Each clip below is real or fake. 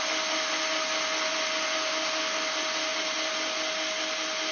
real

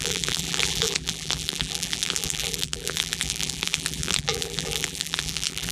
fake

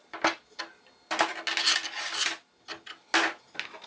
real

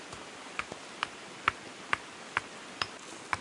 real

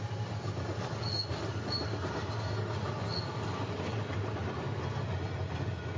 real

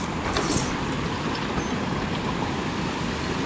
real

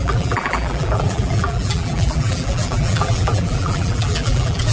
fake